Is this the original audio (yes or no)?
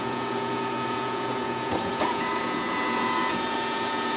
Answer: no